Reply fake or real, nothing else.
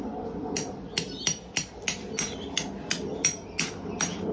real